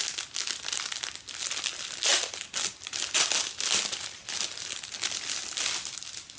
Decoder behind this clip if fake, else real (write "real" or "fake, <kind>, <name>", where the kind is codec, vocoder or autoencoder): real